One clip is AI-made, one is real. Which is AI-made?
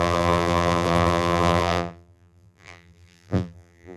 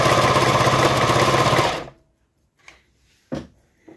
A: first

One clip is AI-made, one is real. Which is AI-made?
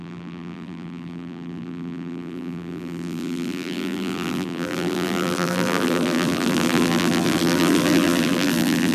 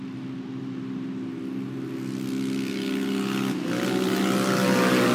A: first